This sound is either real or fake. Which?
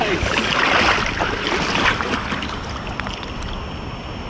real